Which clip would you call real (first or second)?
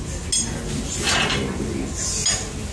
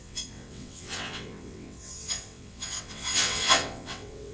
first